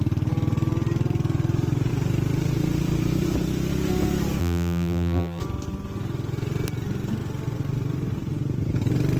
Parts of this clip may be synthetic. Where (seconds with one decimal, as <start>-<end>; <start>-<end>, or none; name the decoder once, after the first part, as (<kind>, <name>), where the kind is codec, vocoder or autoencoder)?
4.4-5.4 (vocoder, BigVGAN v2)